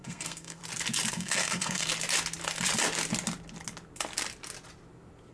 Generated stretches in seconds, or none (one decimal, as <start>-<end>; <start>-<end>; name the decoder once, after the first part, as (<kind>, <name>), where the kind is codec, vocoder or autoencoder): 0.0-0.6 (codec, SNAC); 1.1-1.9